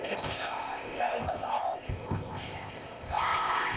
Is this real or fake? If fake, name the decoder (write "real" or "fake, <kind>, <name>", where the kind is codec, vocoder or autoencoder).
fake, codec, ZipCodec